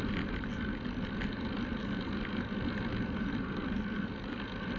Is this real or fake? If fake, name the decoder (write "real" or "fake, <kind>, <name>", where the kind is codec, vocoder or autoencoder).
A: real